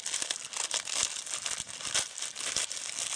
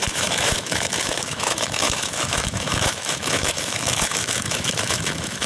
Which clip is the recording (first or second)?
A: first